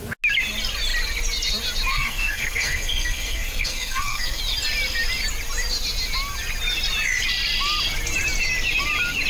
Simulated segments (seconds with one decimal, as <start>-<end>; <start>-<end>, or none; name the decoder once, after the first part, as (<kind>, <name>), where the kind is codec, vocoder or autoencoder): 1.9-4.4 (codec, SNAC)